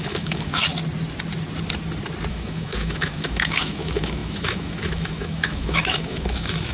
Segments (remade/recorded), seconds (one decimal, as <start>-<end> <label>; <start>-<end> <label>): 0.0-0.6 remade; 0.6-2.3 recorded; 2.3-6.7 remade